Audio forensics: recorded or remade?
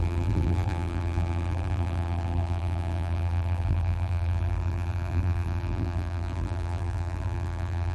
remade